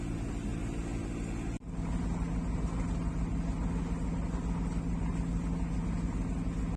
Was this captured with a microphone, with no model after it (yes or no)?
yes